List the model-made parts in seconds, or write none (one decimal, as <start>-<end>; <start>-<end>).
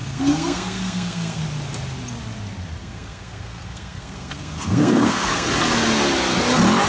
0.0-1.4; 2.8-5.5